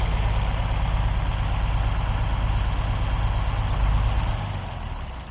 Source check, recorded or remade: recorded